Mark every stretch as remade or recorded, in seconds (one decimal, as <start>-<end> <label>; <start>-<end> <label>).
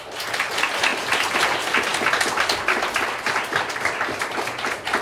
0.0-5.0 recorded